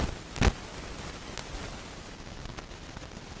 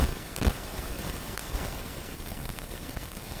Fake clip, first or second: second